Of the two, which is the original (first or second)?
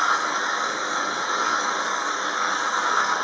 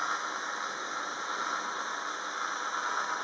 second